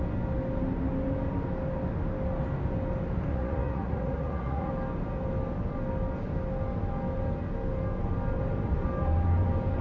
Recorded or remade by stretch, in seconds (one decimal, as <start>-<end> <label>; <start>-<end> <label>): 0.0-3.3 recorded; 3.3-4.7 remade; 4.7-9.8 recorded